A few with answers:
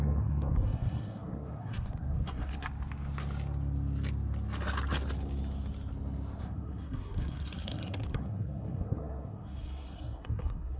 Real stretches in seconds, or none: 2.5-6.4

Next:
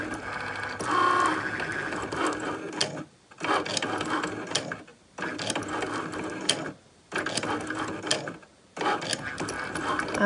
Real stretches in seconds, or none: 0.0-10.3

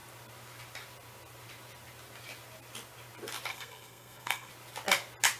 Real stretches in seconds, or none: 0.0-3.5; 4.5-5.4

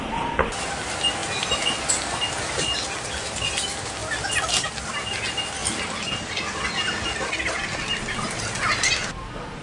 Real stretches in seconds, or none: 0.0-9.6

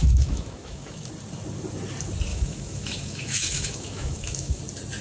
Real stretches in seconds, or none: 1.1-2.3; 4.6-5.0